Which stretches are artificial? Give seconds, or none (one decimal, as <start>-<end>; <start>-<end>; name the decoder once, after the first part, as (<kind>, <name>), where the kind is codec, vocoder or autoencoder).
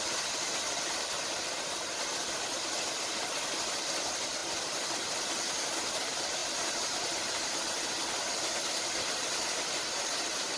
none